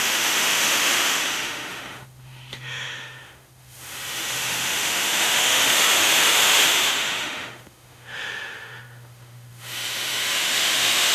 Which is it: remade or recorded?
remade